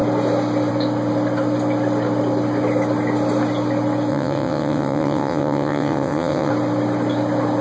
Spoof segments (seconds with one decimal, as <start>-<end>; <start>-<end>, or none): 4.1-6.5